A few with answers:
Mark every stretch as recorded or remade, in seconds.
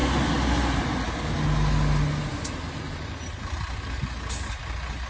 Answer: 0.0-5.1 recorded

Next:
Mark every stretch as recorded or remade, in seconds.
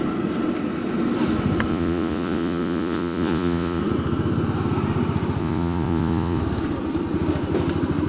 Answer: 0.0-1.7 recorded; 1.7-3.8 remade; 3.8-5.4 recorded; 5.4-6.4 remade; 6.4-8.1 recorded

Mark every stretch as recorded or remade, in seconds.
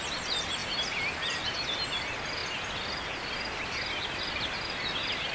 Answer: 0.0-5.3 recorded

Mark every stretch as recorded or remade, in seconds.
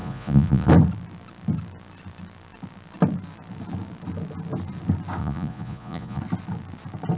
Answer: 0.0-0.7 remade; 0.7-5.2 recorded; 5.2-6.2 remade; 6.2-7.2 recorded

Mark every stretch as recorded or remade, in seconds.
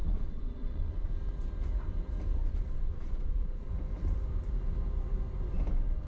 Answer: 0.0-1.1 remade; 1.1-2.4 recorded; 2.4-3.7 remade; 3.7-6.1 recorded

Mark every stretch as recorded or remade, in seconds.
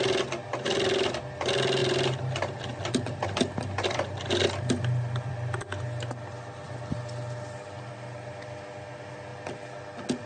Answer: 0.0-10.3 recorded